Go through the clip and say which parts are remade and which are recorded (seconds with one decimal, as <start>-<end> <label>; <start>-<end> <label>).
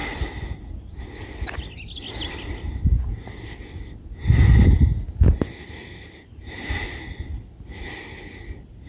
0.0-8.9 recorded